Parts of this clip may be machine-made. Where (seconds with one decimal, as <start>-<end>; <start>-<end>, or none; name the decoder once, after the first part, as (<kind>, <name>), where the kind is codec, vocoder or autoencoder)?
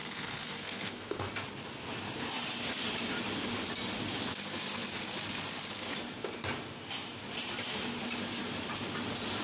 0.0-1.3 (codec, SNAC)